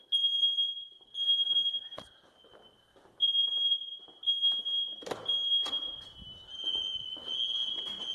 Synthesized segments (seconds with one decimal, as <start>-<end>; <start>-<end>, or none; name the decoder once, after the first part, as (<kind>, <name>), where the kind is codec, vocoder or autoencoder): none